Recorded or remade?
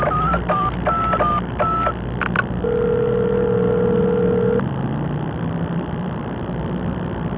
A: recorded